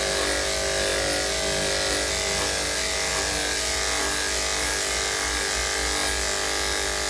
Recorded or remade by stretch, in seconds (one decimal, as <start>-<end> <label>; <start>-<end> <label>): 0.0-7.1 recorded